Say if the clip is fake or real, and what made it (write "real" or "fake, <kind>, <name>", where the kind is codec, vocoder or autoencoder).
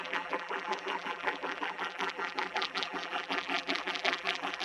fake, vocoder, BigVGAN v2